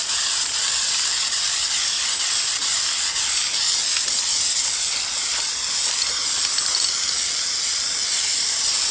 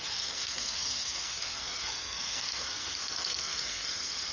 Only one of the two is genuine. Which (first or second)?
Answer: first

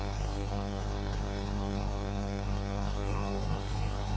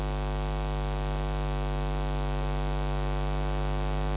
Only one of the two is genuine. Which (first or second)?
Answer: second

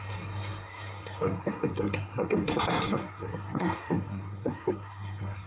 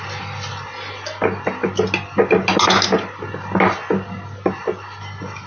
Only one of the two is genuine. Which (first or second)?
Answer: second